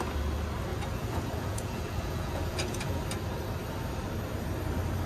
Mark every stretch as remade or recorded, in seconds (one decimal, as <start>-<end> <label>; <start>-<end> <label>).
0.0-0.7 recorded; 0.7-3.0 remade; 3.0-5.1 recorded